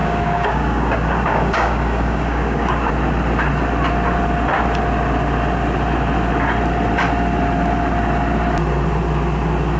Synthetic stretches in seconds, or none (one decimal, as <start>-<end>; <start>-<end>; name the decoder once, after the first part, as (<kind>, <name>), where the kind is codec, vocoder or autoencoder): 0.0-2.9 (codec, DAC)